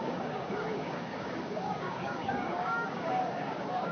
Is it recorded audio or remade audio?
remade